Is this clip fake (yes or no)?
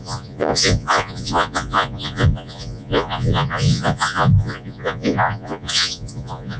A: yes